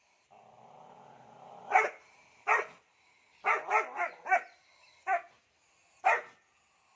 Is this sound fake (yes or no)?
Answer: no